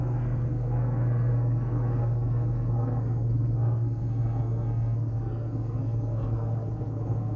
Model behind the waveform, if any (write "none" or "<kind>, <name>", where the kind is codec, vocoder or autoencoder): codec, SNAC